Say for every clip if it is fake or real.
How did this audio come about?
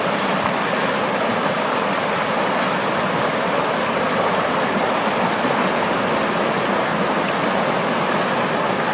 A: real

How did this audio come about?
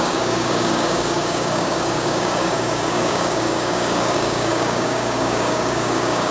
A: fake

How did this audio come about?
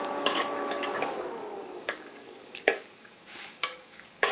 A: fake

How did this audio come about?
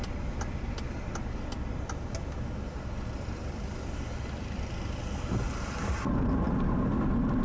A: real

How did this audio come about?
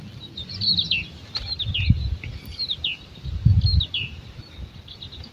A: real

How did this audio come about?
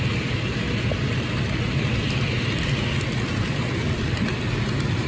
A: real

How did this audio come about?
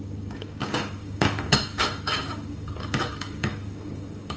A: fake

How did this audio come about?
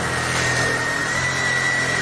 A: real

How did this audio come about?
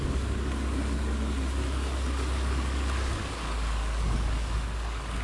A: fake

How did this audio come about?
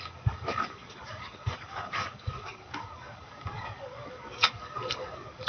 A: fake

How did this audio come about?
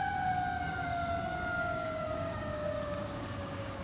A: fake